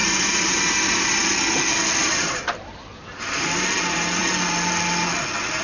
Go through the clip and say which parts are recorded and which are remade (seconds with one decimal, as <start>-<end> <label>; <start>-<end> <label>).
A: 0.0-1.3 remade; 1.3-2.0 recorded; 2.0-3.7 remade; 3.7-5.6 recorded

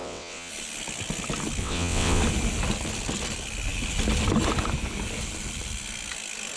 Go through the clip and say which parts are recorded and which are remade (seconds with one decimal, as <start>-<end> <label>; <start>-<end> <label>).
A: 0.0-0.5 remade; 0.5-1.6 recorded; 1.6-2.2 remade; 2.2-6.6 recorded

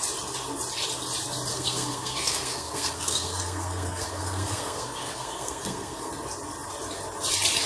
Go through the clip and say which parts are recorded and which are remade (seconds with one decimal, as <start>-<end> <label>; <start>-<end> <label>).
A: 0.0-1.5 recorded; 1.5-6.1 remade; 6.1-7.7 recorded

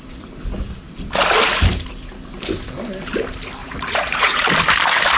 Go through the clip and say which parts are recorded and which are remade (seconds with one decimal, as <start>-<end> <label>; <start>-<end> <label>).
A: 0.0-3.6 recorded; 3.6-4.5 remade; 4.5-5.2 recorded

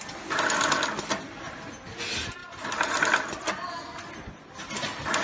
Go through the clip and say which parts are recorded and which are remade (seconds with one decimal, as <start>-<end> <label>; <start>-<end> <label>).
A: 0.0-5.2 recorded

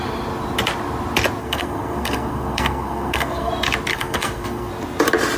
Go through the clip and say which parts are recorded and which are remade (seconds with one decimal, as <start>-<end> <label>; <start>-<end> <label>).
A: 0.0-1.4 recorded; 1.4-3.5 remade; 3.5-3.9 recorded; 3.9-4.7 remade; 4.7-5.4 recorded